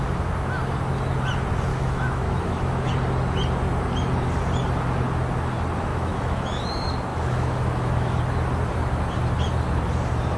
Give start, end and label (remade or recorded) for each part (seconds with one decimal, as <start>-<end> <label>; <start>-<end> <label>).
0.0-1.7 recorded; 1.7-2.9 remade; 2.9-5.9 recorded; 5.9-6.6 remade; 6.6-7.1 recorded; 7.1-8.2 remade; 8.2-10.4 recorded